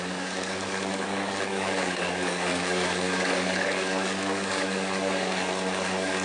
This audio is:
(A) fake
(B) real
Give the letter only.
A